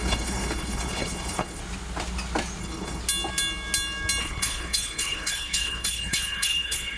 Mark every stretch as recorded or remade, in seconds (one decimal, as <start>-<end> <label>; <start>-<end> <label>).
0.0-1.6 remade; 1.6-2.6 recorded; 2.6-3.0 remade; 3.0-4.2 recorded; 4.2-7.0 remade